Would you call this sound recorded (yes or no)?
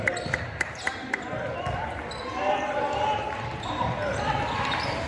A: yes